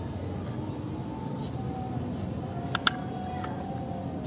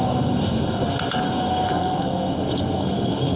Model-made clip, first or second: second